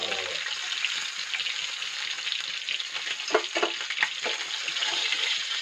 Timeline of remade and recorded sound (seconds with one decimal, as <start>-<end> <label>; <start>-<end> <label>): 0.0-4.8 recorded; 4.8-5.6 remade

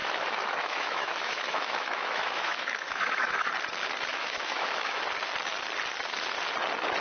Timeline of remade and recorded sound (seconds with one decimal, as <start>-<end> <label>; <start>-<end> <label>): 0.0-3.5 remade; 3.5-4.1 recorded; 4.1-5.0 remade; 5.0-7.0 recorded

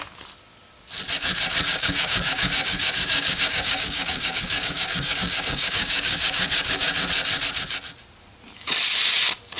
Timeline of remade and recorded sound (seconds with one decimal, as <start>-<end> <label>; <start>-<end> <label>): 0.0-1.7 recorded; 1.7-6.9 remade; 6.9-9.6 recorded

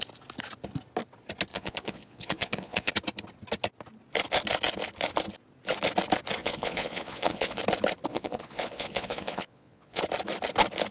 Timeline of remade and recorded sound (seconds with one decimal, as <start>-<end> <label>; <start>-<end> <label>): 0.0-1.5 recorded; 1.5-2.9 remade; 2.9-6.4 recorded; 6.4-7.6 remade; 7.6-8.1 recorded; 8.1-10.0 remade; 10.0-10.9 recorded